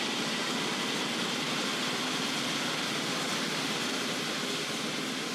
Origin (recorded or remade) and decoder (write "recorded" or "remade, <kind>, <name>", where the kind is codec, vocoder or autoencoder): recorded